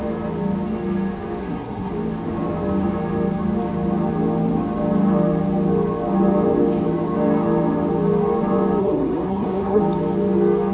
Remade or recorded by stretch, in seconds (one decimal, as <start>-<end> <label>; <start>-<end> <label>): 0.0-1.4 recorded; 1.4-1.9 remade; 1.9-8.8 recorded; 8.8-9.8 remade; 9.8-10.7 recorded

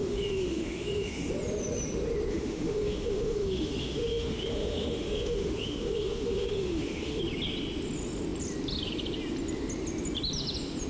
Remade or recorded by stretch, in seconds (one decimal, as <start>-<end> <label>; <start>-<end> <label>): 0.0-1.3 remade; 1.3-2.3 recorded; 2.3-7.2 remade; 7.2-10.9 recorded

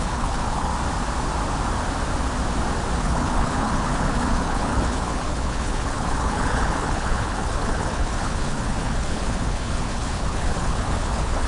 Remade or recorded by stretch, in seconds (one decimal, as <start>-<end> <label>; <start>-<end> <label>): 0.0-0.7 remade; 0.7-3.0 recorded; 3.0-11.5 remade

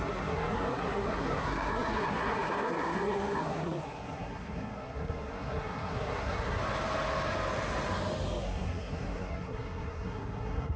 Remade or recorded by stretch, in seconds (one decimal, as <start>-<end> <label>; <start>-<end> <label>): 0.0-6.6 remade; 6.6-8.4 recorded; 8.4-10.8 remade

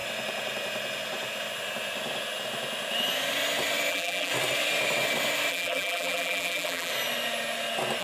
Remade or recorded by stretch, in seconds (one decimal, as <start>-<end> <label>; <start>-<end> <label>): 0.0-3.9 recorded; 3.9-4.3 remade; 4.3-5.5 recorded; 5.5-6.9 remade; 6.9-8.0 recorded